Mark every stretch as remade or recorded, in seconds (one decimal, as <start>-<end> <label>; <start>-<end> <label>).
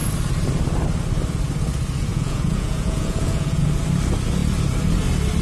0.0-2.1 recorded; 2.1-3.7 remade; 3.7-5.4 recorded